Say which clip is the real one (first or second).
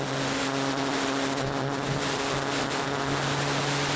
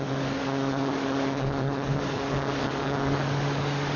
first